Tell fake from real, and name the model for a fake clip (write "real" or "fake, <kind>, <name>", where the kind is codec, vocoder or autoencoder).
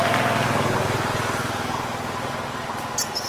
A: real